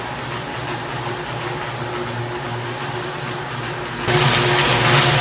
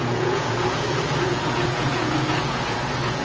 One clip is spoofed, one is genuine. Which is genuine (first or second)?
first